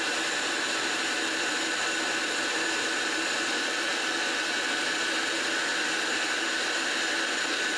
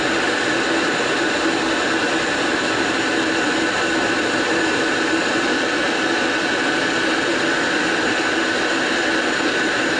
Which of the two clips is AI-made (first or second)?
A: second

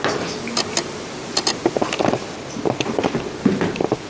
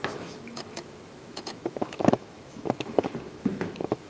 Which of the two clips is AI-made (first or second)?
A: second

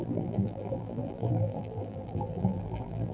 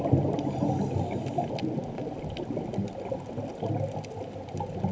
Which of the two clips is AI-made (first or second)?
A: first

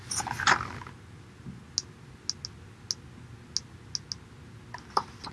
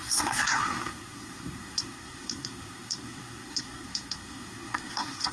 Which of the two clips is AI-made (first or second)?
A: second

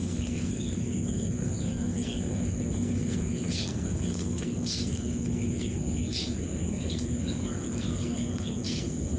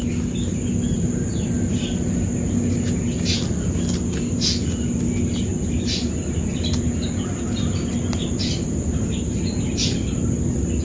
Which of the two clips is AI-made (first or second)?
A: first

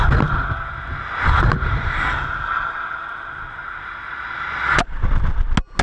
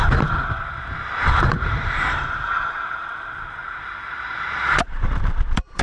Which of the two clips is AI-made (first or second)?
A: second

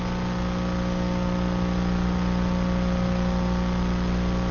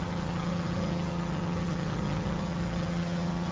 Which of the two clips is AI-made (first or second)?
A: second